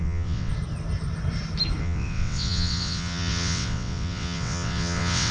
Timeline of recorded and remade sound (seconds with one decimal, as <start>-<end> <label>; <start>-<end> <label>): 0.0-0.5 remade; 0.5-1.8 recorded; 1.8-5.3 remade